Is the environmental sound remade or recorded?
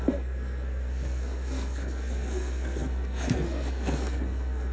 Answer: remade